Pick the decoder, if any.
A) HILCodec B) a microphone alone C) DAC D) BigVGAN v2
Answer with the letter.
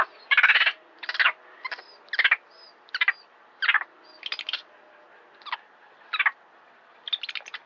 B